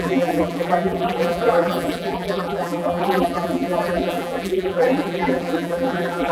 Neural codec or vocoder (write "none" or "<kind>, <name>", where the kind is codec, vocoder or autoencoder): vocoder, BigVGAN v2